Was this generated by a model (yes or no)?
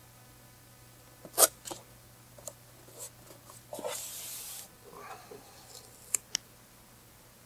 no